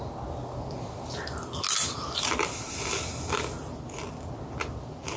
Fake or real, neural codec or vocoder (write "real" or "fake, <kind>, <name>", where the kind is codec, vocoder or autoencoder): real